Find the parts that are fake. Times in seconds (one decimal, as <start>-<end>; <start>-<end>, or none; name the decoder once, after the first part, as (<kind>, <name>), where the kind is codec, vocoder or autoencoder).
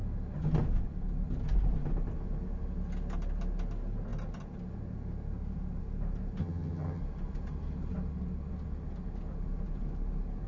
6.4-7.0 (vocoder, HiFi-GAN)